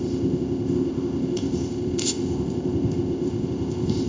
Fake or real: fake